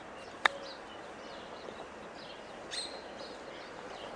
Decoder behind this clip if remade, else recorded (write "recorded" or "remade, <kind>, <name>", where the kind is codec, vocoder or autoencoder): recorded